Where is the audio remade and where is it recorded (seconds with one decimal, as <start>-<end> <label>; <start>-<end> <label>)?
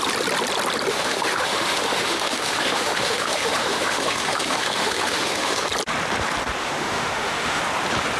0.0-0.9 recorded; 0.9-5.7 remade; 5.7-6.6 recorded; 6.6-7.6 remade; 7.6-8.2 recorded